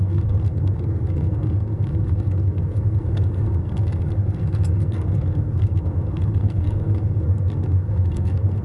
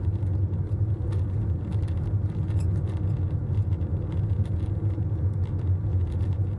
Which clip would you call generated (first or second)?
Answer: first